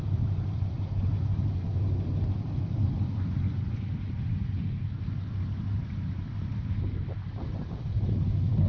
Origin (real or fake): fake